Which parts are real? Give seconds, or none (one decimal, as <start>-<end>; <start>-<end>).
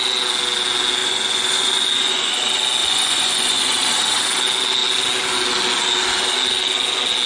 0.0-1.0; 2.3-2.8; 4.0-7.3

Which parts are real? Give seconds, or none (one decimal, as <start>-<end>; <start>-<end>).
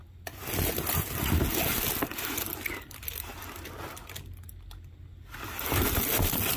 1.2-6.6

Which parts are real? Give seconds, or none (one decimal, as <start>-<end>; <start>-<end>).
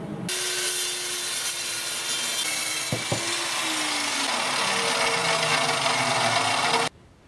0.0-7.3